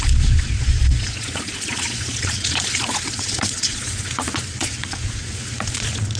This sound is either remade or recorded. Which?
remade